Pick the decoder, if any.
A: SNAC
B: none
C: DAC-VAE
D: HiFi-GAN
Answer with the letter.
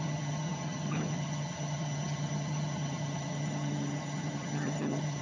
D